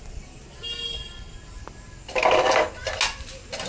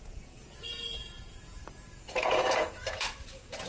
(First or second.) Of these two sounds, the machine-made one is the second